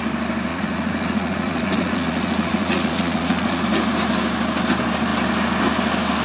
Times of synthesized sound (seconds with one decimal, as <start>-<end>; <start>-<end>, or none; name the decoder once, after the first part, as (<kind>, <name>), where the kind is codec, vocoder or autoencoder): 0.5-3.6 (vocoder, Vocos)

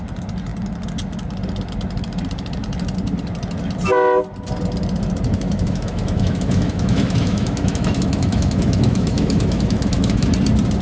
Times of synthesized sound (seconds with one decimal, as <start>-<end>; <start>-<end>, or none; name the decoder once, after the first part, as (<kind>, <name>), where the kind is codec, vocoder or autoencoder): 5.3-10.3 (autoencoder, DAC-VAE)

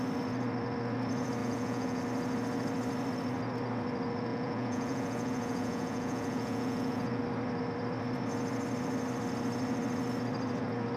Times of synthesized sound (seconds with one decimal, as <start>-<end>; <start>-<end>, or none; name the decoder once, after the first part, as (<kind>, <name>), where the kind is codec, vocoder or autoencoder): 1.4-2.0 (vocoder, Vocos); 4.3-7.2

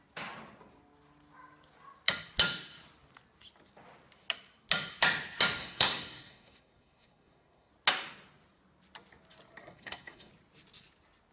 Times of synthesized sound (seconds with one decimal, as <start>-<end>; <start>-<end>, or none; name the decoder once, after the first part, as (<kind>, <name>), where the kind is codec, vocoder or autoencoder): 5.6-7.7 (codec, SNAC); 9.6-10.3